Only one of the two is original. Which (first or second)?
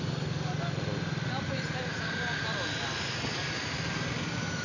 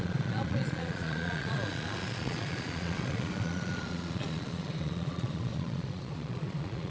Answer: first